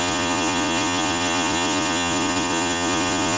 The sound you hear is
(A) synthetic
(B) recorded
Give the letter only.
A